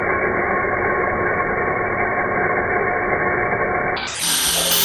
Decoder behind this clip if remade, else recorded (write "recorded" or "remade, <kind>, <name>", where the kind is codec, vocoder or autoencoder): recorded